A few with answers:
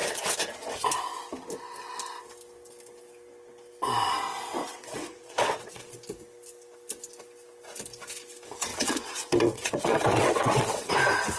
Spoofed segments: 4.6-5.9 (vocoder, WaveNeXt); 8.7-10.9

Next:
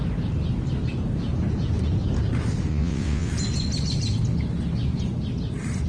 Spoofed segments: 2.7-3.3 (vocoder, WaveNeXt)

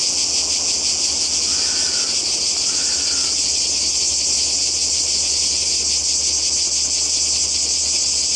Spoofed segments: none

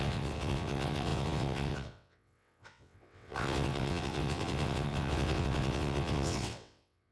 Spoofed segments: 0.0-7.1 (vocoder, WaveNeXt)

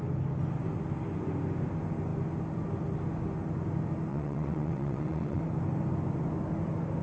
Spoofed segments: 4.1-5.4 (vocoder, WaveNeXt)

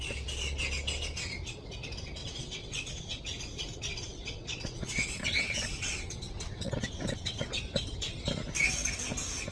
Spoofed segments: 2.2-3.2 (vocoder, WaveNeXt); 3.9-7.6

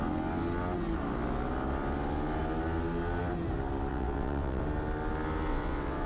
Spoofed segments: 3.9-4.6 (vocoder, WaveNeXt); 5.5-6.1

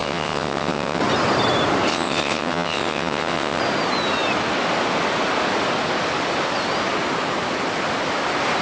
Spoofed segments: 0.0-1.0 (vocoder, WaveNeXt); 1.9-3.6